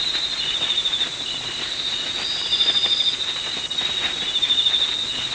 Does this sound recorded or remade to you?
recorded